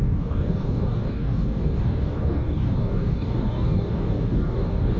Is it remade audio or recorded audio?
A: remade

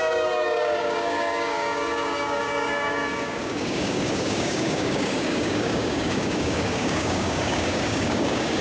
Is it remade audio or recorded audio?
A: remade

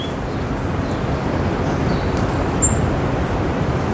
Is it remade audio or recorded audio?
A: recorded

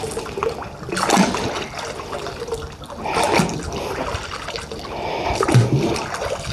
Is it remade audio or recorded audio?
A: recorded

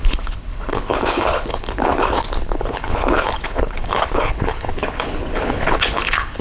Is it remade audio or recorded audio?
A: remade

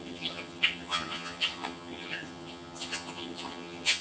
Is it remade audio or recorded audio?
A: remade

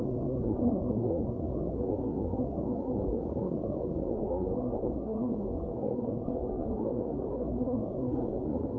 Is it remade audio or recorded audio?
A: remade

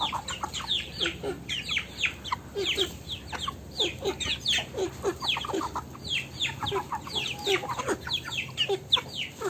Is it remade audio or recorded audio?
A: remade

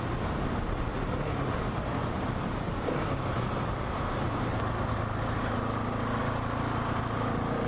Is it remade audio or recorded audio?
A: recorded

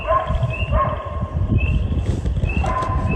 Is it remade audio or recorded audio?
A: recorded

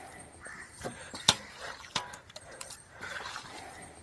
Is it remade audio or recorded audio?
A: remade